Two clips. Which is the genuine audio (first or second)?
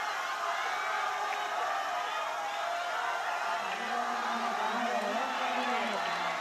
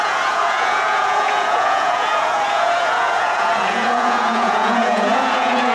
first